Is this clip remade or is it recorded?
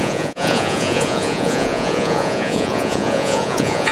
remade